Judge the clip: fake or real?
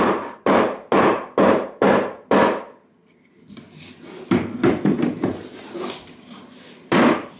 real